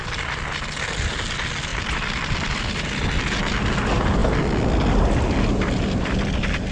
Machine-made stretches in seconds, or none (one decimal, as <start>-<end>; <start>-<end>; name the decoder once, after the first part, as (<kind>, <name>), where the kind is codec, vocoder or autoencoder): 1.7-3.0 (vocoder, BigVGAN v2)

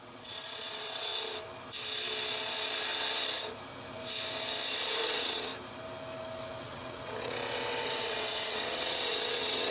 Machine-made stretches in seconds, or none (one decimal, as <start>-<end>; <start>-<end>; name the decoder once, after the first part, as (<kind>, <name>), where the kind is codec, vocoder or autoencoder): 0.0-1.1 (vocoder, WaveNeXt); 5.0-5.5; 6.6-9.7